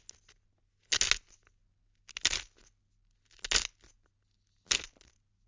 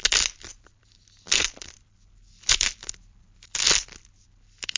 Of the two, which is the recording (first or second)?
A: first